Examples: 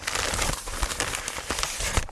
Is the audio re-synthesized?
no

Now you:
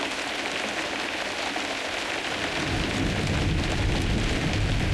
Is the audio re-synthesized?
no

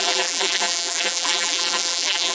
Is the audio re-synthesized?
yes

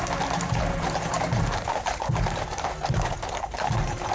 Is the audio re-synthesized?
yes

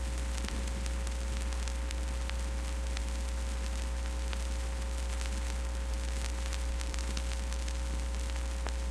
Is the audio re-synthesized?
no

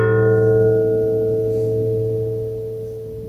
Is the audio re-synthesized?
no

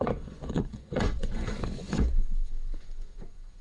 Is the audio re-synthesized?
yes